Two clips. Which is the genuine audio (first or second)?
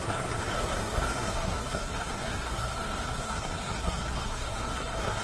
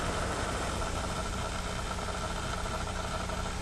second